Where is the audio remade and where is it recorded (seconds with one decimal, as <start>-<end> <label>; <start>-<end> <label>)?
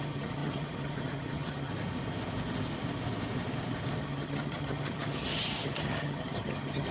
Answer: 0.0-1.7 remade; 1.7-4.0 recorded; 4.0-6.9 remade